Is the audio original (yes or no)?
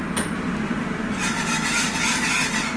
yes